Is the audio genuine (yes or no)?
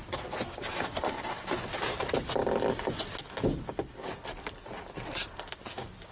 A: yes